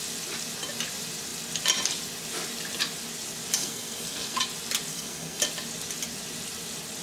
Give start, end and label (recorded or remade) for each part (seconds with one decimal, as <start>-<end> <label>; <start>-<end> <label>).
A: 0.0-3.6 recorded; 3.6-4.4 remade; 4.4-4.9 recorded; 4.9-5.4 remade; 5.4-7.0 recorded